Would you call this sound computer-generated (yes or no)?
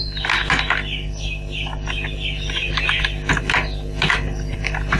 no